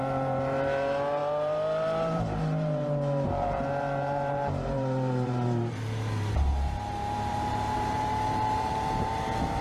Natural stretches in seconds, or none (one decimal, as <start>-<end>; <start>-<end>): 6.5-7.3